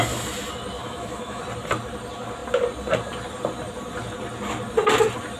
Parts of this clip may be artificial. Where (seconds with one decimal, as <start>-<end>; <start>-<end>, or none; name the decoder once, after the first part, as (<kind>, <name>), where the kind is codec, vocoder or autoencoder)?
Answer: 0.8-1.4 (autoencoder, DAC-VAE)